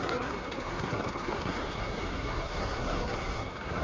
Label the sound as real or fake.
fake